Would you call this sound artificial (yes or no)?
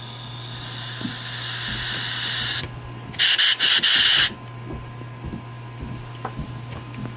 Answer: no